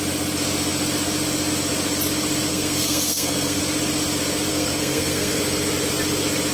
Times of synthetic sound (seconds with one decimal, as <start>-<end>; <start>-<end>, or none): 2.5-3.6; 4.5-5.4